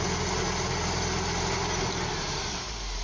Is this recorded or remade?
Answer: recorded